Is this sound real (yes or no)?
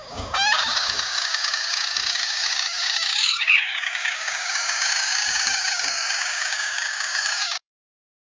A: no